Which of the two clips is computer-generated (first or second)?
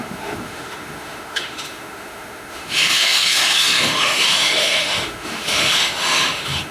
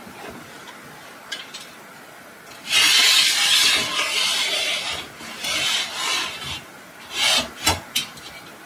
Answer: first